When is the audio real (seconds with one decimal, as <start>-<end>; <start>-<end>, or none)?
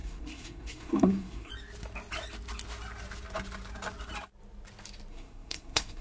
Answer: 1.5-5.1